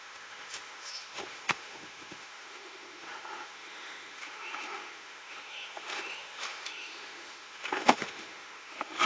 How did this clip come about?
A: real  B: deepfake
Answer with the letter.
B